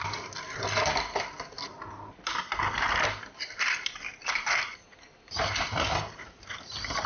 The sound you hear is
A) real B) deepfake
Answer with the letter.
A